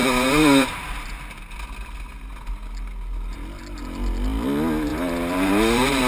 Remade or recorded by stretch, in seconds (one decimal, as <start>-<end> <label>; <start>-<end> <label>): 0.0-0.8 remade; 0.8-4.9 recorded; 4.9-6.1 remade